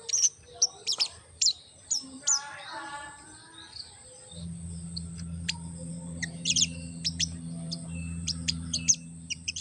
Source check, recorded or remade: remade